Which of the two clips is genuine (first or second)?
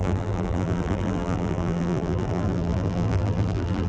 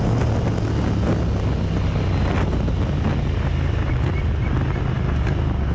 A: second